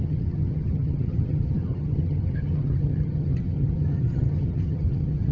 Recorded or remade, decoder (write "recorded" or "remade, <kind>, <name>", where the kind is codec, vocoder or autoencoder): remade, vocoder, HiFi-GAN